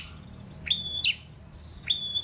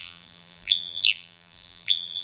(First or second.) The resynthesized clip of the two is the second